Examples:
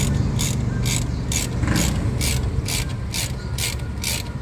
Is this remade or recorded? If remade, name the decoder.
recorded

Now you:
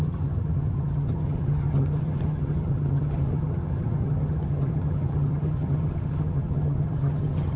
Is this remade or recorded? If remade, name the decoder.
remade, vocoder, HiFi-GAN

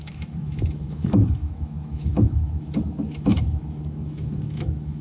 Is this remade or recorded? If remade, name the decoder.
remade, autoencoder, DAC-VAE